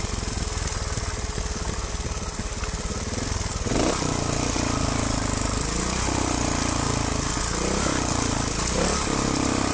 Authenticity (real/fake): real